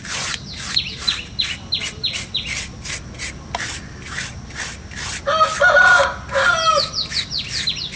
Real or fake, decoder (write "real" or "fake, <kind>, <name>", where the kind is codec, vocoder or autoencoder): real